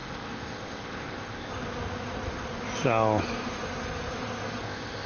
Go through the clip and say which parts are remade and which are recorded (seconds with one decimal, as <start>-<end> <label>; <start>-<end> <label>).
0.0-1.5 remade; 1.5-4.6 recorded; 4.6-5.1 remade